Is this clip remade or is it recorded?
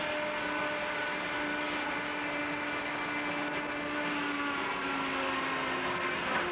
recorded